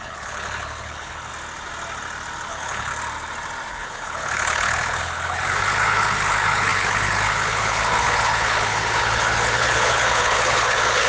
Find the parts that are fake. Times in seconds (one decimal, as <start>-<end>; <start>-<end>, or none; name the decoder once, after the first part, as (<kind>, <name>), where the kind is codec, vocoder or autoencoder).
0.0-1.3 (codec, HILCodec); 2.5-2.9; 3.7-11.1